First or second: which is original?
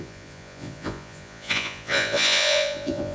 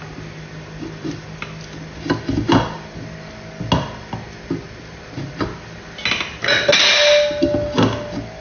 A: second